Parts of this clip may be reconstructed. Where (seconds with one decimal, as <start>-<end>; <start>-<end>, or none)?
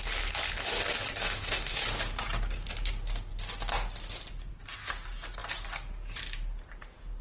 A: 1.2-1.8